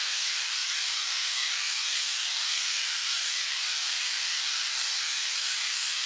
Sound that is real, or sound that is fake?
fake